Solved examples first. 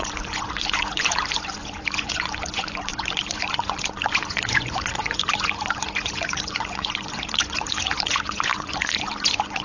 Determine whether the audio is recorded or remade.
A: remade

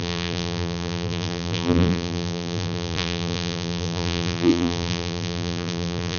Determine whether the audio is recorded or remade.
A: remade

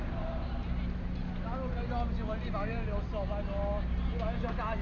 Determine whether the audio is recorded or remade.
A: recorded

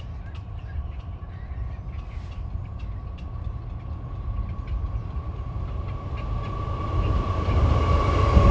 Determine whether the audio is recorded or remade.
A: recorded